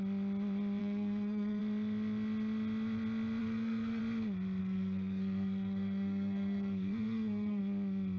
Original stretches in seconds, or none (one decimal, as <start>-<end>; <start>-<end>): 0.0-0.8; 1.6-3.4; 4.0-4.6; 7.6-8.2